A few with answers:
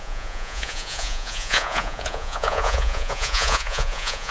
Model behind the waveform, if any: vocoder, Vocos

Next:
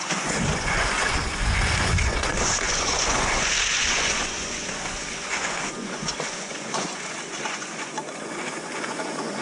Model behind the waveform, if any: vocoder, Vocos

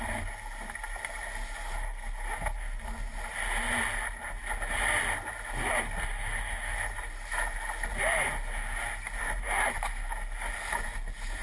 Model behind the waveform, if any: none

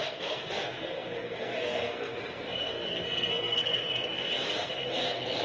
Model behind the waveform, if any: codec, SNAC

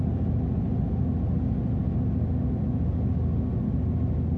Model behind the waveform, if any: none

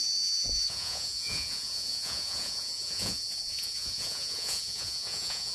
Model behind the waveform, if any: vocoder, Vocos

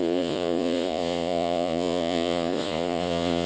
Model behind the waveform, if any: vocoder, Vocos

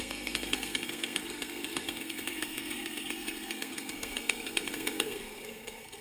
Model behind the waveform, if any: codec, SNAC